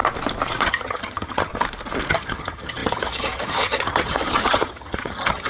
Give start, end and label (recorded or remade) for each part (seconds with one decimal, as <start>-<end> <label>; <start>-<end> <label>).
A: 0.0-0.7 recorded; 0.7-1.5 remade; 1.5-2.1 recorded; 2.1-5.5 remade